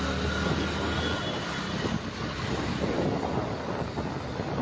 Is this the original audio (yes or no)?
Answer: yes